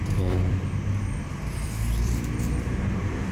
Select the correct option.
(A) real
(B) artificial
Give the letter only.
B